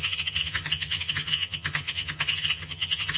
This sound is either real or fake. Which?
fake